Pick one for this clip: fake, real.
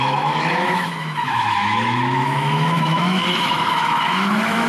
fake